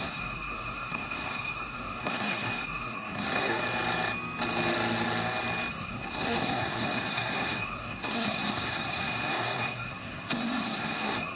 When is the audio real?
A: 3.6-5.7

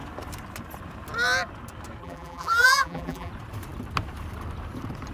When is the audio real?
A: 0.0-2.0; 3.3-5.1

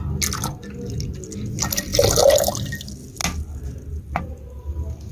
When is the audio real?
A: 0.0-5.1